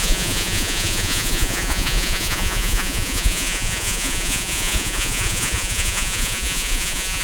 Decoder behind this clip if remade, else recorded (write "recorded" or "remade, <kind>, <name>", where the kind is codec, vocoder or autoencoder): remade, vocoder, Vocos